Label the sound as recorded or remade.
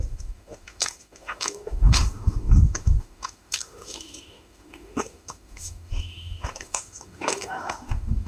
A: remade